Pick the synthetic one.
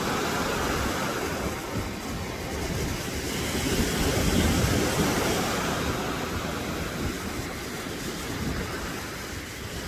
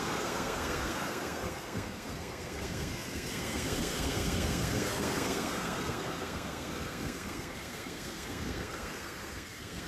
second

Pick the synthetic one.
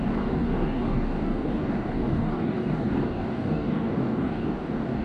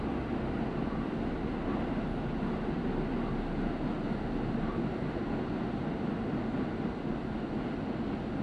first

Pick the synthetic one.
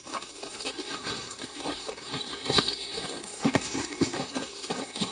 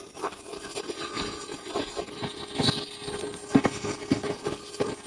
first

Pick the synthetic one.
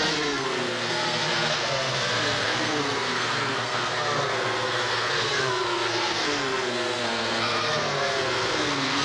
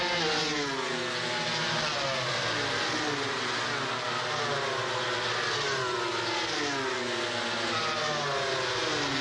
first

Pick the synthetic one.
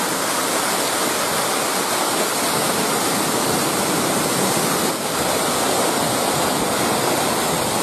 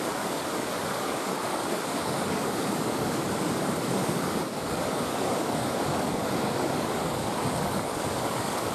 second